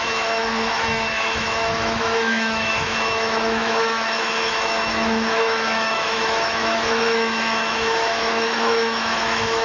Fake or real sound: fake